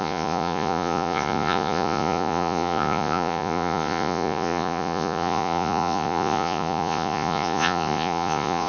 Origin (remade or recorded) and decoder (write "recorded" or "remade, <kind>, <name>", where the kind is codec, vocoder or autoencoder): remade, vocoder, Vocos